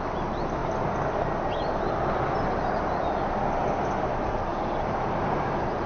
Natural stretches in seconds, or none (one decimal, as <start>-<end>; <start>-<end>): 0.0-5.9